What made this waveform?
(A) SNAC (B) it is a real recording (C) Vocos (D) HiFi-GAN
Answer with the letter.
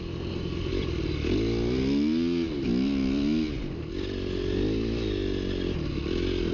B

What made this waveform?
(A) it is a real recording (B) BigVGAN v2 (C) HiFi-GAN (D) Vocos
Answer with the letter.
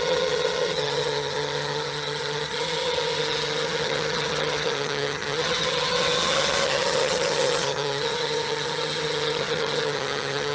C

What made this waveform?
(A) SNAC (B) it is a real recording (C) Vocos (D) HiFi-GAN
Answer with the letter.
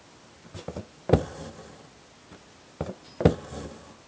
B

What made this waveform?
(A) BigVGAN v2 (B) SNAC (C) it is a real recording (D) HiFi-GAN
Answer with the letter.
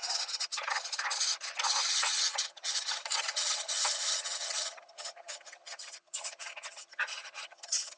D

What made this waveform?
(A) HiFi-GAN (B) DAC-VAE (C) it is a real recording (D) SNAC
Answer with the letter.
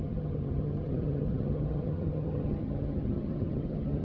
A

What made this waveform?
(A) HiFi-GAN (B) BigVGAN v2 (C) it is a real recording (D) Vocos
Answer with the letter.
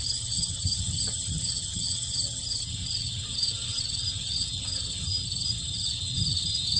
A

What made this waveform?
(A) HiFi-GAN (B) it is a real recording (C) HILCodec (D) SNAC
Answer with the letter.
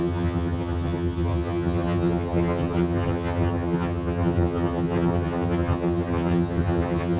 A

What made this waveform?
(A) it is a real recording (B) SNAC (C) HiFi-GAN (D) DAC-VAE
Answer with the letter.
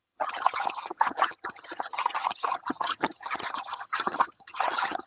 C